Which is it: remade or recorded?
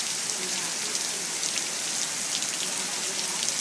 recorded